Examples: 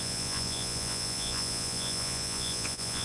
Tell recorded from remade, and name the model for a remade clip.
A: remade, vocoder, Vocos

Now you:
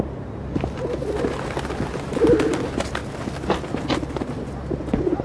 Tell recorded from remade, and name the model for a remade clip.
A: recorded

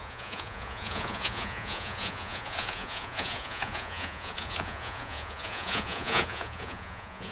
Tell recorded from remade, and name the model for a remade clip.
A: remade, vocoder, Vocos